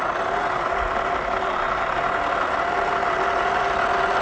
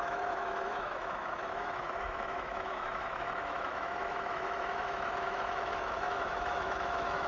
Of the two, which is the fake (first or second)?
second